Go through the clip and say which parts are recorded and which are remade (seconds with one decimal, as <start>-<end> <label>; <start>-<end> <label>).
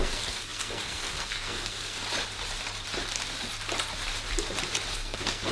0.0-2.0 remade; 2.0-4.9 recorded; 4.9-5.5 remade